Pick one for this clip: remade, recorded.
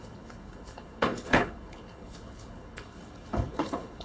remade